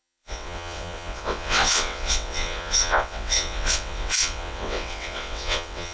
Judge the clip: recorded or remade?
remade